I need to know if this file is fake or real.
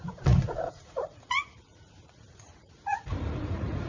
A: fake